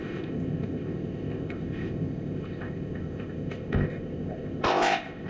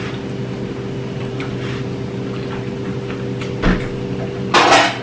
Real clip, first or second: second